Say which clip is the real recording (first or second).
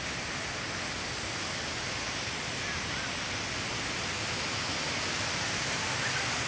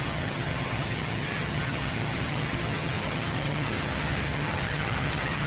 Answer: first